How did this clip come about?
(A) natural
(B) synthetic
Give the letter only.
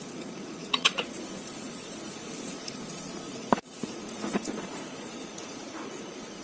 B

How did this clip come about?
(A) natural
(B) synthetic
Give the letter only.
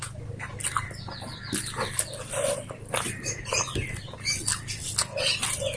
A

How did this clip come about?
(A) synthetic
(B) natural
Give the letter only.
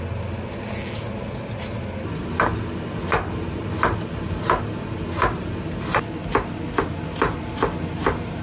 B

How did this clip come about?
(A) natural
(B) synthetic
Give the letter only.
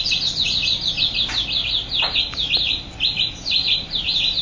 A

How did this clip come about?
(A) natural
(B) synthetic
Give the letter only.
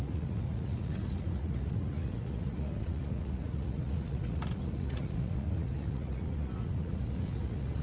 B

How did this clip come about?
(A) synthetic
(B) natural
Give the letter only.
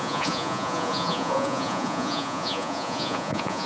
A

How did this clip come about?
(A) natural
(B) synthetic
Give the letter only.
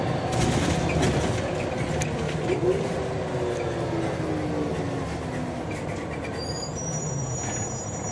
A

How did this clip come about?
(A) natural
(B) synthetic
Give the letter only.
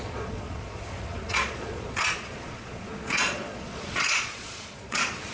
B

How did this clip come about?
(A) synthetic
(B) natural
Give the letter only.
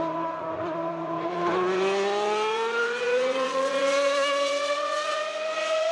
A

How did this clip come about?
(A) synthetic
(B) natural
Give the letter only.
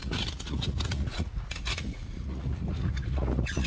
A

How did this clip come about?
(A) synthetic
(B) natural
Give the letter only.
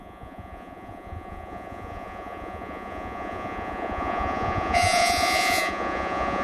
A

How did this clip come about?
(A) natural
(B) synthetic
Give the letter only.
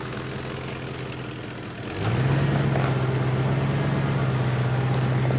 A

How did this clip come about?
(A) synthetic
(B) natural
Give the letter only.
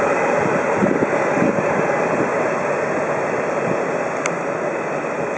B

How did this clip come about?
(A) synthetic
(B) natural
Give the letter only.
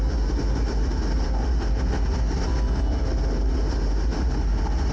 B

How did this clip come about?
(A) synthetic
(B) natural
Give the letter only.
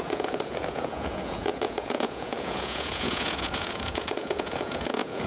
A